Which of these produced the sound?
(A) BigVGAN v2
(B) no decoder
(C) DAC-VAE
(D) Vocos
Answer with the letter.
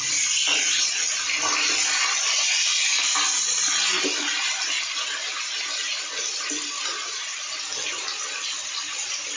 B